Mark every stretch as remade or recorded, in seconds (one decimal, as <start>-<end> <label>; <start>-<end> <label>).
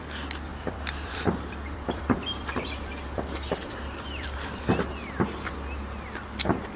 0.0-0.5 recorded; 0.5-4.6 remade; 4.6-6.8 recorded